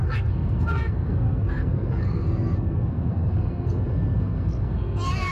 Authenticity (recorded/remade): remade